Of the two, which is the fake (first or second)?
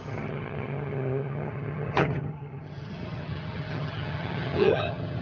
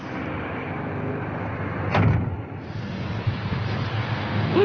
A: first